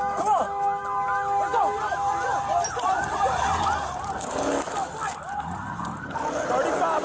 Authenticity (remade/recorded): recorded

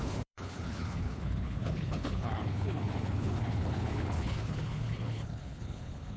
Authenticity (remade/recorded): remade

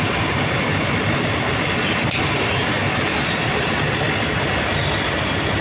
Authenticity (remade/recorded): recorded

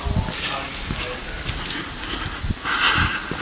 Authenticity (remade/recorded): recorded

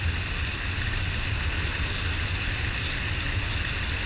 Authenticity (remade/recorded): recorded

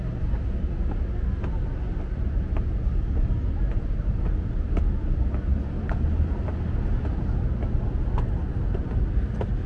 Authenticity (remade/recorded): recorded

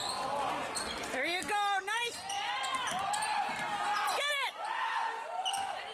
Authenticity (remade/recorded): recorded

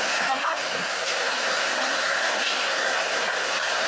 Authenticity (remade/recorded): remade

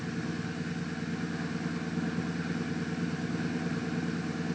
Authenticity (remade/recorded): recorded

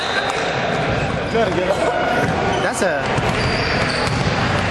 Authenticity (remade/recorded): recorded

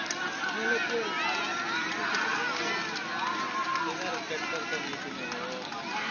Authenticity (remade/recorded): recorded